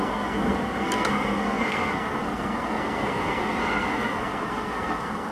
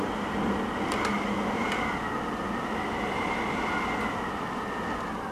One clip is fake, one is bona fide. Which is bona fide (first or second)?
second